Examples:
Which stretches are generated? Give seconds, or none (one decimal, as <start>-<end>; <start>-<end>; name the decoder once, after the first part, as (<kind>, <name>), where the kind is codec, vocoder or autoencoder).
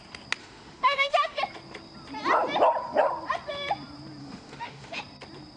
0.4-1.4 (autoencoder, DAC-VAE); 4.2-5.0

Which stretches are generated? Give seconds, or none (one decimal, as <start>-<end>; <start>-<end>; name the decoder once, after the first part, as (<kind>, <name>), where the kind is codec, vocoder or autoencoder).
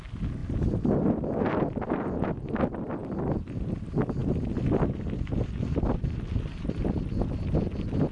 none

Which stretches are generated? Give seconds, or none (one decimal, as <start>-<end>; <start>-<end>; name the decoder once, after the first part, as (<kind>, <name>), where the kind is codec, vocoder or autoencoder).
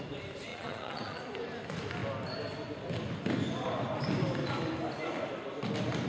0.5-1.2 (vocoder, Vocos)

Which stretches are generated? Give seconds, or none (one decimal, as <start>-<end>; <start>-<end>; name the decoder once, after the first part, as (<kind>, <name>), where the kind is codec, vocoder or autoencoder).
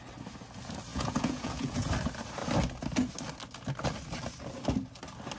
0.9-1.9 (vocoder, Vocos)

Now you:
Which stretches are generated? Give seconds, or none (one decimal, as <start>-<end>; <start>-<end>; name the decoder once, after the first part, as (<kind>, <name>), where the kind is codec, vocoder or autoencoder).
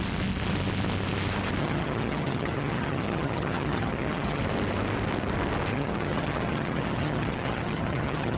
1.6-4.4 (vocoder, HiFi-GAN); 5.7-8.4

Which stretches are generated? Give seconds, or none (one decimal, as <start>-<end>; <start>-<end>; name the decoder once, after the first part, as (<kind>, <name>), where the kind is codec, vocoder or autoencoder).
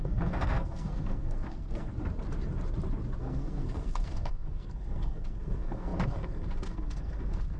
0.0-1.9 (codec, SNAC); 3.2-7.6